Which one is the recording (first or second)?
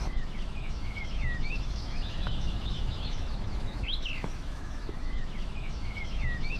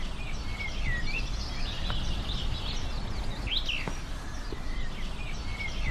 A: second